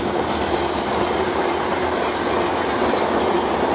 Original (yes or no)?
yes